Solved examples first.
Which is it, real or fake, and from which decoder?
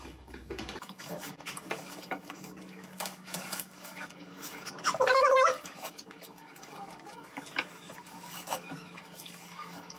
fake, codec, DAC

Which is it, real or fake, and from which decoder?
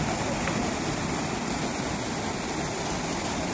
real